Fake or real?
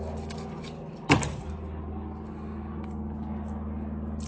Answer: real